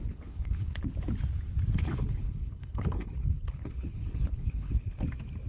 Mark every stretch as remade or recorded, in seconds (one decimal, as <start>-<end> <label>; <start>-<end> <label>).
0.0-0.8 remade; 0.8-1.7 recorded; 1.7-5.0 remade; 5.0-5.5 recorded